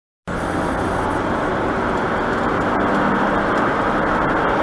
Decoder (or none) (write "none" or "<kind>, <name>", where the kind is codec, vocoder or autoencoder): none